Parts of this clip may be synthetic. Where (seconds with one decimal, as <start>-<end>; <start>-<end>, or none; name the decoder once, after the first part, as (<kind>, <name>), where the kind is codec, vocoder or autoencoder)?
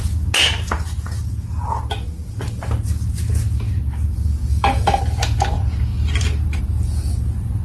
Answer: 4.5-5.0 (autoencoder, DAC-VAE)